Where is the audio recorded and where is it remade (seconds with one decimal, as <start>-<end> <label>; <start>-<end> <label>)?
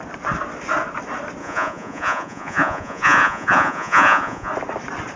0.0-1.4 recorded; 1.4-4.5 remade; 4.5-5.2 recorded